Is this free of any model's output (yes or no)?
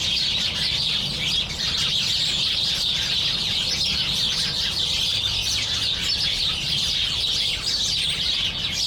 yes